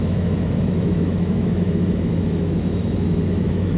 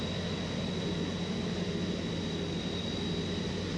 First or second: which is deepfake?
first